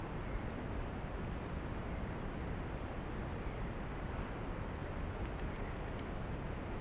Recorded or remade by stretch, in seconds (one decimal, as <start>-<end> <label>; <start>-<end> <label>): 0.0-6.8 recorded